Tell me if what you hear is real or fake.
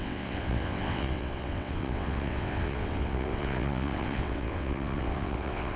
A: fake